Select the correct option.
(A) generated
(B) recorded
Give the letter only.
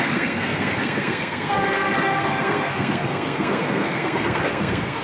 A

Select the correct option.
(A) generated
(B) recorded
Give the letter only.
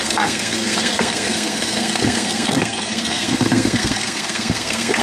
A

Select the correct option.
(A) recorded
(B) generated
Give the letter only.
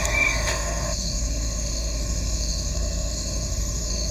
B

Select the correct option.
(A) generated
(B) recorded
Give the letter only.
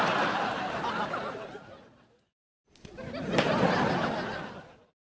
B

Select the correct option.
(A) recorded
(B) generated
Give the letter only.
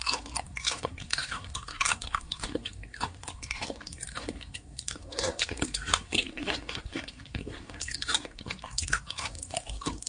B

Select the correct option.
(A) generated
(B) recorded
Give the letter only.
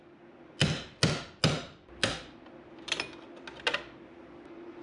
B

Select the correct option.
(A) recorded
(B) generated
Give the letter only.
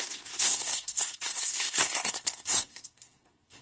B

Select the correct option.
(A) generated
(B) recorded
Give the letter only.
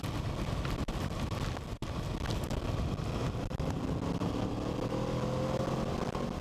B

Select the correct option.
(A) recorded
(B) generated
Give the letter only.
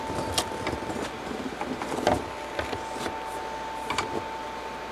A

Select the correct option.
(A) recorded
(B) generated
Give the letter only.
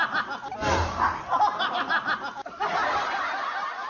A